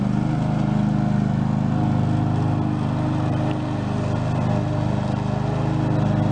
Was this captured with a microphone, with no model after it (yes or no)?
yes